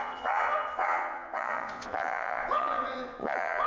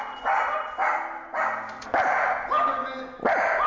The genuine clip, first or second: second